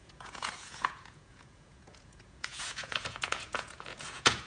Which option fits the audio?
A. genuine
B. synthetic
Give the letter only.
B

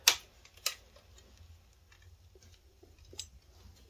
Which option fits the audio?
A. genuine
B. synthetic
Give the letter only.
A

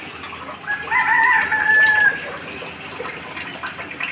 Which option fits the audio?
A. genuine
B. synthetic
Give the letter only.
A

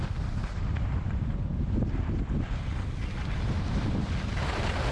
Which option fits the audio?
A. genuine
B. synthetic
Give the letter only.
B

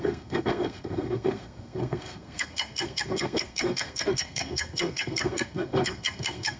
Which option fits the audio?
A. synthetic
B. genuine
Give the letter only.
A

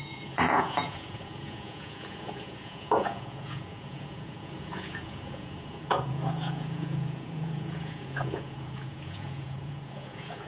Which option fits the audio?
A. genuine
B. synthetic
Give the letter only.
B